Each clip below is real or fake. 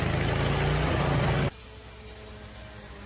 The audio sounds real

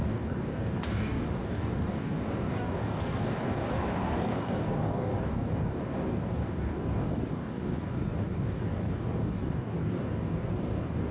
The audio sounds fake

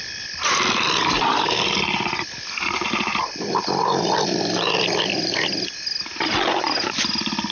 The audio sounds real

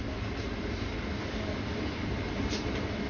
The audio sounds real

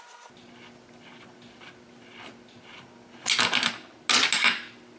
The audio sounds real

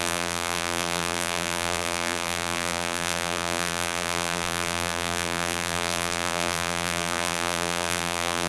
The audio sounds fake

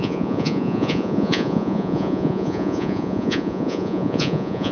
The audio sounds fake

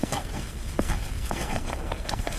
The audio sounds fake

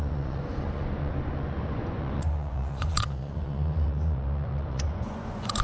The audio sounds fake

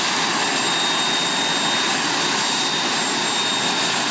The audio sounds real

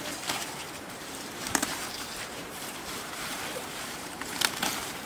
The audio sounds fake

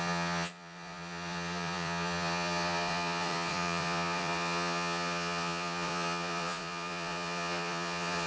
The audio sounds fake